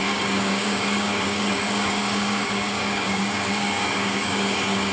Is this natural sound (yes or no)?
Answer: no